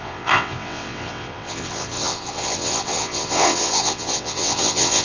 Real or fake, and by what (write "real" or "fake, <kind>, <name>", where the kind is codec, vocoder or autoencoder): fake, vocoder, WaveNeXt